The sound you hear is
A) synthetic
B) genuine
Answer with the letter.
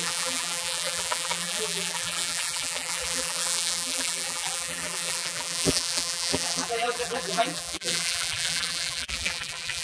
A